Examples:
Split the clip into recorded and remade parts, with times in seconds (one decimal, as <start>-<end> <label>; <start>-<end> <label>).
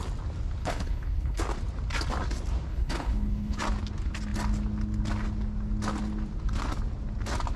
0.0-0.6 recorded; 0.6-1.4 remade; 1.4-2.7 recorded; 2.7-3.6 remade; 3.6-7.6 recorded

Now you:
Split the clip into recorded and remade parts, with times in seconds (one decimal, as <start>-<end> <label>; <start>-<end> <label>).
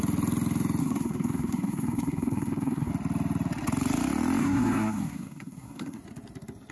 0.0-0.8 recorded; 0.8-2.9 remade; 2.9-4.4 recorded; 4.4-6.0 remade; 6.0-6.7 recorded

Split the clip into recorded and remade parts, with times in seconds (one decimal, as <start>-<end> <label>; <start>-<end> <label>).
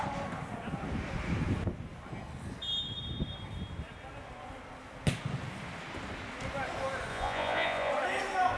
0.0-7.1 recorded; 7.1-7.9 remade; 7.9-8.6 recorded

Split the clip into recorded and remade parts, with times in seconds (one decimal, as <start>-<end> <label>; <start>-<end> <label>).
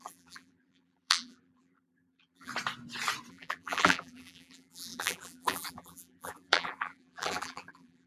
0.0-2.5 remade; 2.5-3.3 recorded; 3.3-8.1 remade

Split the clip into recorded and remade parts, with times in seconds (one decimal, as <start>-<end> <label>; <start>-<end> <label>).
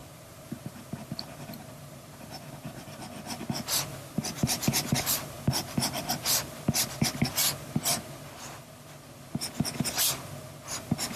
0.0-3.0 remade; 3.0-3.9 recorded; 3.9-6.9 remade; 6.9-11.2 recorded